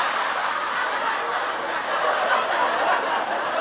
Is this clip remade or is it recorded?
recorded